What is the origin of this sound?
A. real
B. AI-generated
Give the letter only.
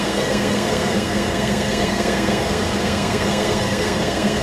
B